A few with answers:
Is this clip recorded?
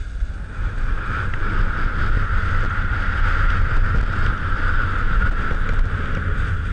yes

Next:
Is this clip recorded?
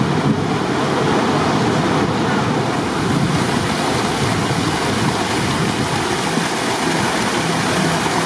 yes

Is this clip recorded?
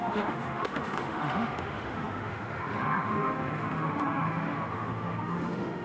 no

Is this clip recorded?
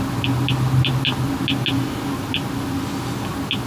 yes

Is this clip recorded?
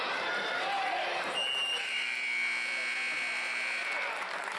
yes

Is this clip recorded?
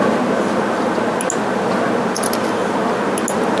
yes